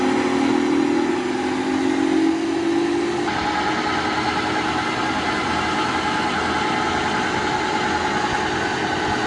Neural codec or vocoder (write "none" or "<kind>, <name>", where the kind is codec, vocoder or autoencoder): none